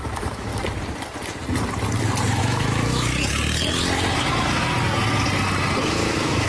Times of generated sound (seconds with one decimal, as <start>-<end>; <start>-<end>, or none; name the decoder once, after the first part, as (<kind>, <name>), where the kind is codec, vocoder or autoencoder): 0.0-0.5 (autoencoder, DAC-VAE); 2.4-3.1; 5.8-6.5